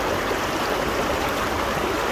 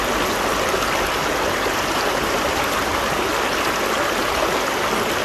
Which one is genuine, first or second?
second